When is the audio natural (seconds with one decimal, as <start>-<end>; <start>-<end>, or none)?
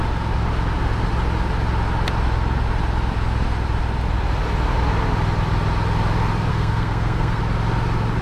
0.0-6.5; 7.4-8.2